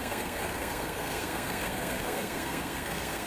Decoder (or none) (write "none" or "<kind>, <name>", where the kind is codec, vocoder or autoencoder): codec, SNAC